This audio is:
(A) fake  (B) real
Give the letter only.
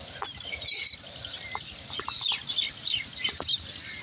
B